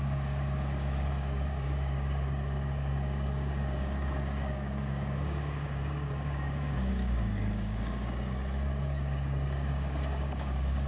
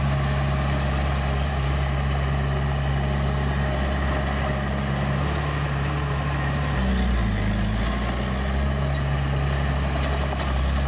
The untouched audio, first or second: second